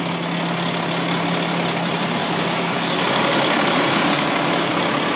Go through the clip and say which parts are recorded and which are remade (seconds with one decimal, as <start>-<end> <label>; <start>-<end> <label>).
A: 0.0-2.2 recorded; 2.2-4.7 remade; 4.7-5.2 recorded